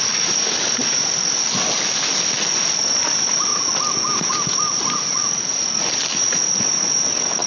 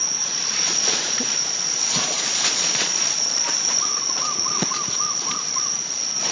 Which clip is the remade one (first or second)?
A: second